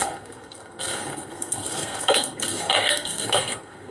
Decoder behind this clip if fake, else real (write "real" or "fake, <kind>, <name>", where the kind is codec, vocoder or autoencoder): fake, codec, SNAC